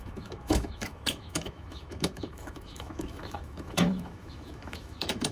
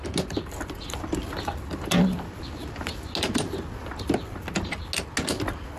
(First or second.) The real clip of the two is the second